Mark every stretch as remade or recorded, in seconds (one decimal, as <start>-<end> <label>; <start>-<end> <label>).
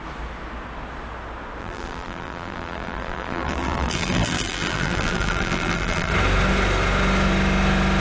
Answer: 0.0-1.6 recorded; 1.6-6.1 remade; 6.1-8.0 recorded